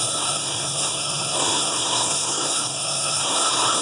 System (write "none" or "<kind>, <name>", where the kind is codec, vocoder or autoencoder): codec, SNAC